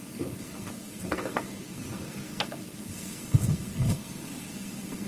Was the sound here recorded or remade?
remade